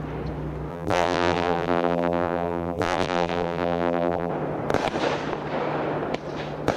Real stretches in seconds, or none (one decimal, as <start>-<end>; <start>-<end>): 0.0-0.7; 4.3-6.8